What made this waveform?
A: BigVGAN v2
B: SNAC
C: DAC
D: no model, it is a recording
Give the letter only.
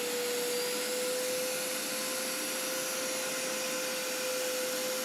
D